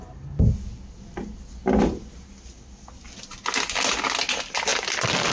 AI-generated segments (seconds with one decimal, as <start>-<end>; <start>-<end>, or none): none